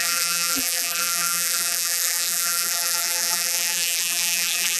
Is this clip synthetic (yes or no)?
yes